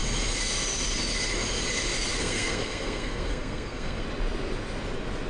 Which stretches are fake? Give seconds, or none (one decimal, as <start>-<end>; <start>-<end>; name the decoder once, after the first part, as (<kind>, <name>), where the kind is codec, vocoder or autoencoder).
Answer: 2.2-4.0 (codec, SNAC)